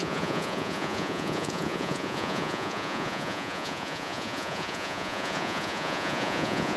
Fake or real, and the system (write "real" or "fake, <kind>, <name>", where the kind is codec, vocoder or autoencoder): fake, vocoder, Vocos